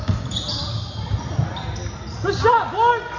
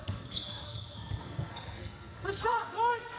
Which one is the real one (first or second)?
first